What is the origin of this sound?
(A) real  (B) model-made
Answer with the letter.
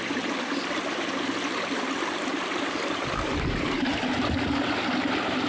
A